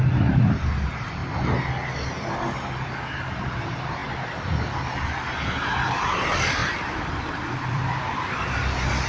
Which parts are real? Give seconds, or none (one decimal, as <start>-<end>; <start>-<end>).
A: 1.2-3.5; 4.0-6.0

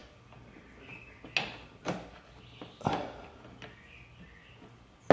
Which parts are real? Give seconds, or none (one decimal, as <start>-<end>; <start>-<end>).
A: 0.0-5.1

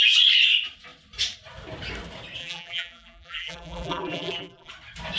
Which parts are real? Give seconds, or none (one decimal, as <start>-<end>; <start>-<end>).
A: 0.0-2.4; 4.7-5.2

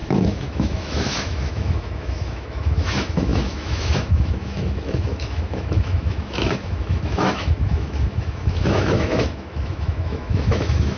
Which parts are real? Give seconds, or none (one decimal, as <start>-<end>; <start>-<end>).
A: none

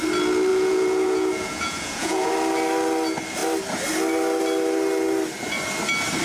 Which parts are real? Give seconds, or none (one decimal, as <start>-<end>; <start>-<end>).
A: 0.0-0.5; 2.3-6.2

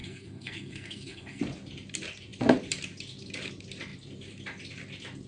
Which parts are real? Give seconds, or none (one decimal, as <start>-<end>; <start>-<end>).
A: 1.4-5.3

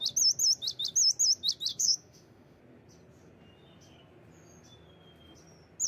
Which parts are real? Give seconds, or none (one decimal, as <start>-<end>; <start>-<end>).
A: 0.0-1.7; 2.6-5.9